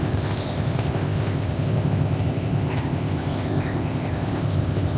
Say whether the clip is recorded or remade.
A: remade